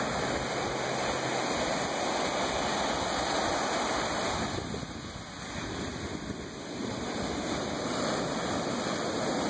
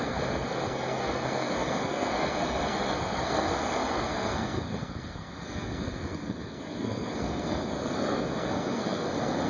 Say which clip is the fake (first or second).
second